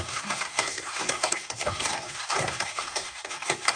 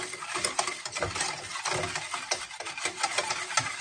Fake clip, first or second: first